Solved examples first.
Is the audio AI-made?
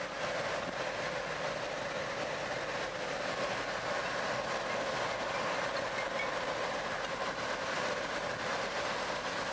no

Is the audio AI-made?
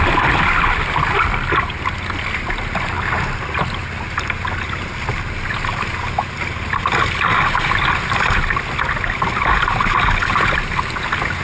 no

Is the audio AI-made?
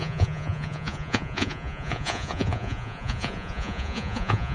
yes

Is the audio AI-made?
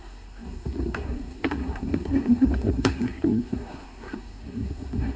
yes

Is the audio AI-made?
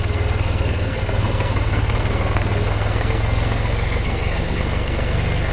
yes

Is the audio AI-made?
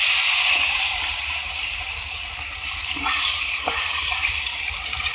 yes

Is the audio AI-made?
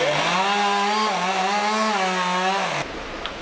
no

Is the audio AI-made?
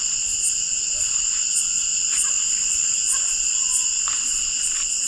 no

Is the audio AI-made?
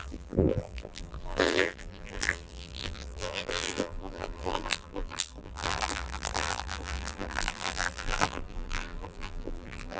yes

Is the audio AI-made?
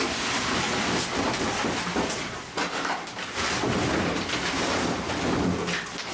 no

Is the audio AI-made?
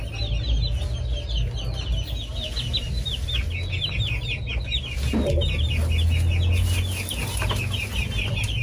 no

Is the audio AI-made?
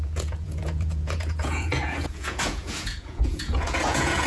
yes